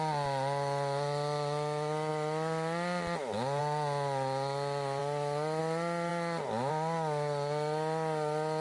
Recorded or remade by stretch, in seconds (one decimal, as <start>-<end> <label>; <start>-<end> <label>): 0.0-8.6 recorded